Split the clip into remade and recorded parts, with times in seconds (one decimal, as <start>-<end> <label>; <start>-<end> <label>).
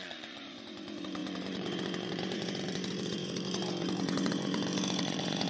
0.0-5.5 remade